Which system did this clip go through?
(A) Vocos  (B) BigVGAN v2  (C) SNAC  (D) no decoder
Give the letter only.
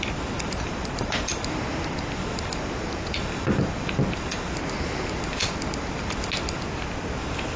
D